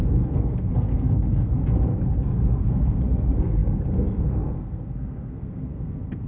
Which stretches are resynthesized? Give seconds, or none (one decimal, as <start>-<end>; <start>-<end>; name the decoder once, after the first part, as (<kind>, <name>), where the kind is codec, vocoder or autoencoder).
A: 0.0-1.6 (codec, SNAC); 2.2-6.3